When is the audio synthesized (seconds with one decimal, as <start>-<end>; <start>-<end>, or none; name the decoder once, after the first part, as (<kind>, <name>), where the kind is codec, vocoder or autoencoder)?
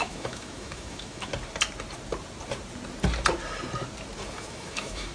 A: 0.0-1.3 (autoencoder, DAC-VAE); 4.4-5.1